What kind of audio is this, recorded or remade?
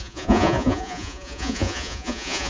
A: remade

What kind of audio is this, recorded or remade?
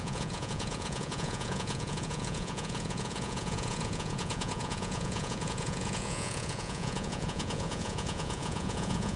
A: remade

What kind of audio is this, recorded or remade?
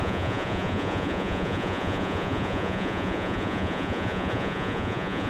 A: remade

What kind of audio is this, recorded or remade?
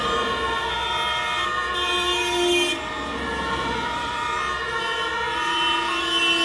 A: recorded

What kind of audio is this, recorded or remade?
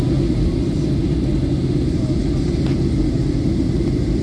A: recorded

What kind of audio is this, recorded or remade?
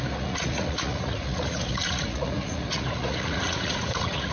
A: remade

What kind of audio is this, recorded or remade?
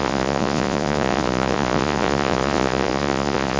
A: remade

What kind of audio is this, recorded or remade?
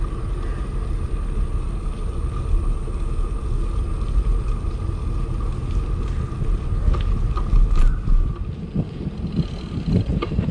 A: recorded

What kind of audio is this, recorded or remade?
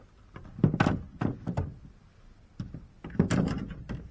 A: recorded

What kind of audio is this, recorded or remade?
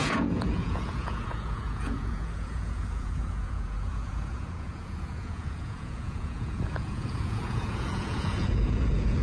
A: remade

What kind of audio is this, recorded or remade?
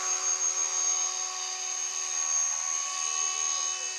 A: recorded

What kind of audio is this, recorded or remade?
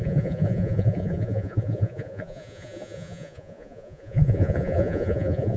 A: remade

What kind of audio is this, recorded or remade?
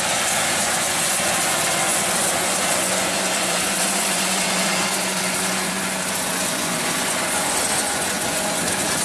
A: remade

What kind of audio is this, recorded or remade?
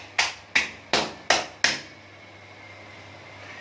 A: recorded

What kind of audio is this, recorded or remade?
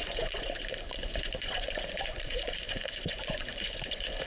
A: remade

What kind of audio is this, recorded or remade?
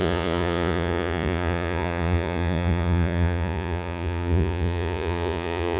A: remade